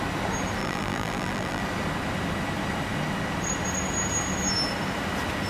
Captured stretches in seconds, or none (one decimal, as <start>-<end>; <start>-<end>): 0.0-0.6; 1.6-5.5